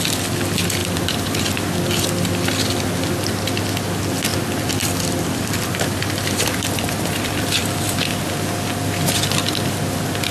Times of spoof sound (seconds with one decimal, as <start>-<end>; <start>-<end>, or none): 0.8-1.4; 4.3-8.3